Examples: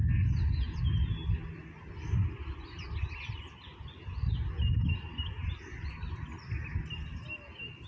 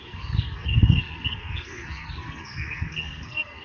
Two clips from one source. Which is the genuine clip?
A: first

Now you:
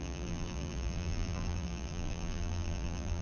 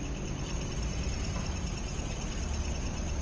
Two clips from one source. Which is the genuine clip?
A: second